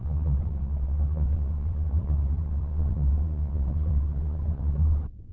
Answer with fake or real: fake